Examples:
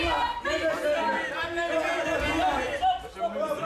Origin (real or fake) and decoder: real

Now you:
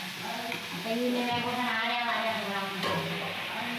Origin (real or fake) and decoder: real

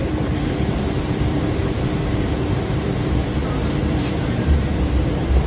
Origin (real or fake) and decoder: fake, vocoder, BigVGAN v2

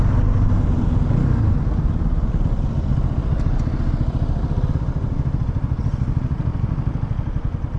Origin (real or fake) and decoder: real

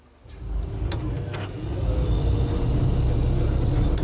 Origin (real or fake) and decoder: real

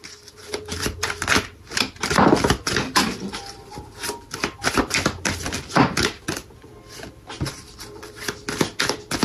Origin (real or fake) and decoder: fake, vocoder, BigVGAN v2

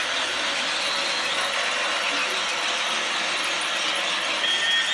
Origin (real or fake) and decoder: real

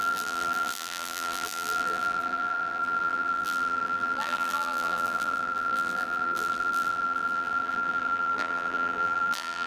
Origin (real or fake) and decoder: fake, vocoder, BigVGAN v2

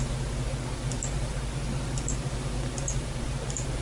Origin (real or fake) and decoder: real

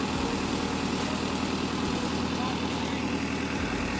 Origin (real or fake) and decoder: real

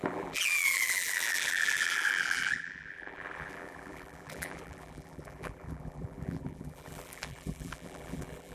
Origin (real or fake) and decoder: fake, vocoder, BigVGAN v2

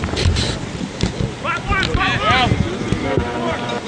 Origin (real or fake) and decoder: real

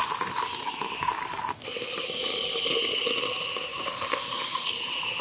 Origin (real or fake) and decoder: real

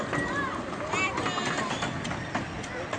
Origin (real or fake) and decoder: real